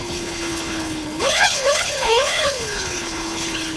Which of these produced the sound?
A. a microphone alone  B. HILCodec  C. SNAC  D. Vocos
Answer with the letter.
B